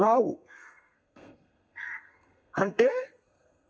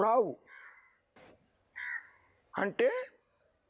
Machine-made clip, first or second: first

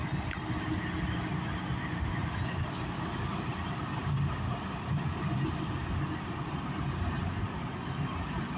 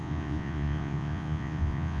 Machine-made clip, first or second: second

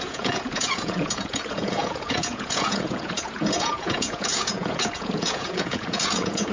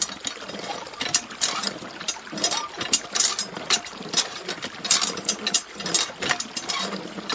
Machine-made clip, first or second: first